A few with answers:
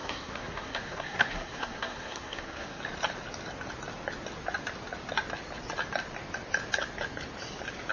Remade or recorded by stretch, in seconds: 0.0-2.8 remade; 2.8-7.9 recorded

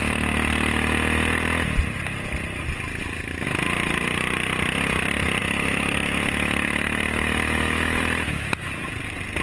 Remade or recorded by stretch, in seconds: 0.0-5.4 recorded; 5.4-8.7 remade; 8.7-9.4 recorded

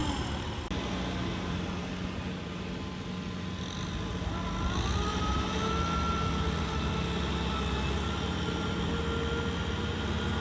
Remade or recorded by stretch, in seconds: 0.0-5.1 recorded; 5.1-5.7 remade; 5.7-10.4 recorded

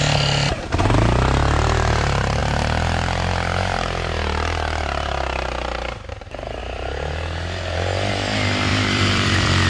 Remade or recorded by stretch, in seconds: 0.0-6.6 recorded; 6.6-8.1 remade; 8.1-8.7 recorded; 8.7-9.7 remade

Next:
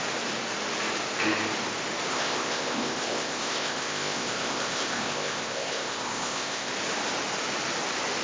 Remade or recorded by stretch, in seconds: 0.0-2.1 recorded; 2.1-6.7 remade; 6.7-8.2 recorded

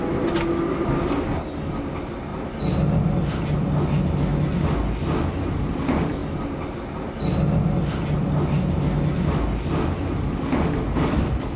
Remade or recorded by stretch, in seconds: 0.0-11.6 recorded

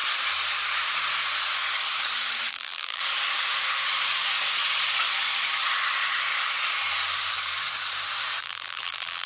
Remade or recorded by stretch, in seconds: 0.0-2.5 recorded; 2.5-3.0 remade; 3.0-8.4 recorded; 8.4-9.3 remade